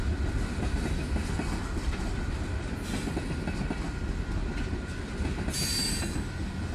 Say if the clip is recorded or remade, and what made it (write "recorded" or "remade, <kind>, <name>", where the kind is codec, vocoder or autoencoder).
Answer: recorded